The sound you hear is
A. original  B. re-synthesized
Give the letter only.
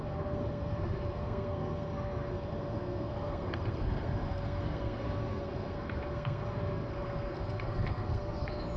B